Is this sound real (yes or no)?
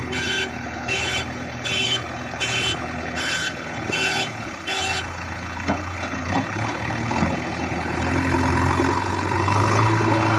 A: no